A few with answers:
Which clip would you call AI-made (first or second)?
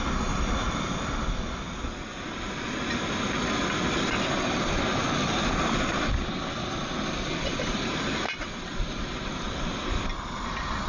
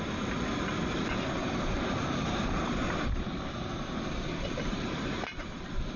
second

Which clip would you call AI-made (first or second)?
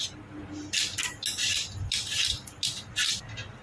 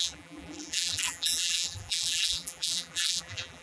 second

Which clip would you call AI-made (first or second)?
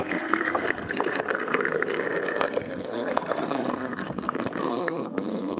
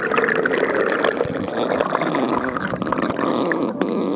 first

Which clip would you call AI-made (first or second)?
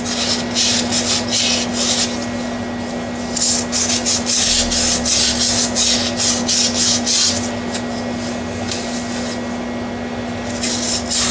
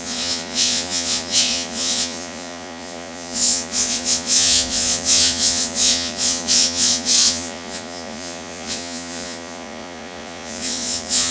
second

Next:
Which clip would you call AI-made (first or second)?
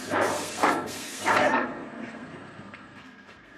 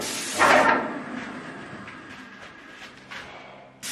first